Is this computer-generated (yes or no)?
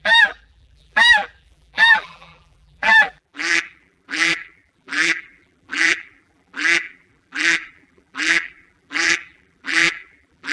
yes